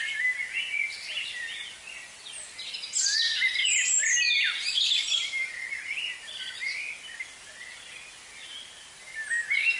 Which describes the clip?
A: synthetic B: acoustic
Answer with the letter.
B